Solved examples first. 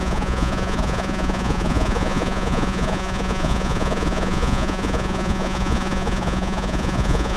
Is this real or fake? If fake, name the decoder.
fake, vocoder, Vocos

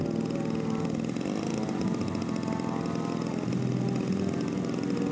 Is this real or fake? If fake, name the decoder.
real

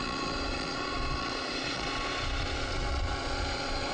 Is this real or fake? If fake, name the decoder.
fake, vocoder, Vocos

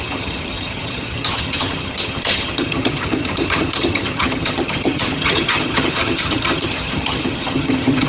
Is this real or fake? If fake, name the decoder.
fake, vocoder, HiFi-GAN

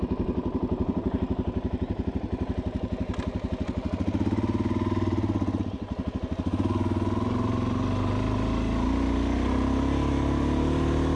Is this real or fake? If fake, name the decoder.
real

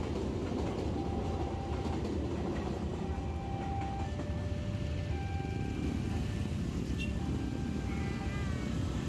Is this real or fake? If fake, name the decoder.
real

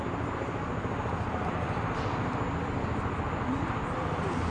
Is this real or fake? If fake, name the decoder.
real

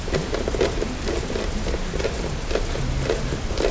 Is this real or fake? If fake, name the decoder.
real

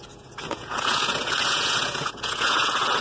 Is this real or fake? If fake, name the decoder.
fake, vocoder, Vocos